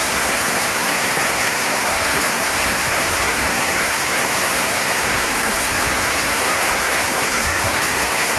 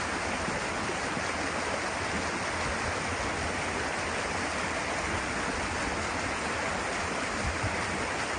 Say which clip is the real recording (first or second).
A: second